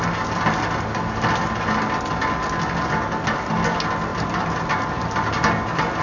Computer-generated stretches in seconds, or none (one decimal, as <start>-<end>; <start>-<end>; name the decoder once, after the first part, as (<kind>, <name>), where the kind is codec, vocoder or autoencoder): 4.1-5.3 (vocoder, BigVGAN v2)